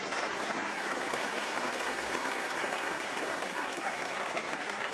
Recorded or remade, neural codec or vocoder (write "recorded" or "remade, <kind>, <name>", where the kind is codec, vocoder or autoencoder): remade, codec, SNAC